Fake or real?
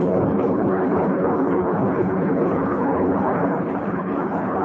fake